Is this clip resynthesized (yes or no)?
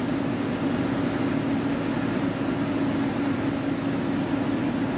no